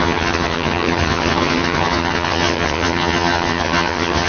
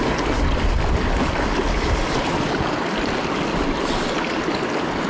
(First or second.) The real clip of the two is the second